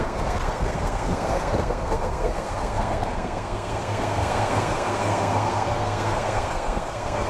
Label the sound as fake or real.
fake